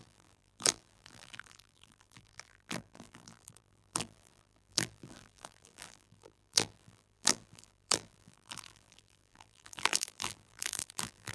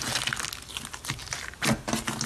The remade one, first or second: first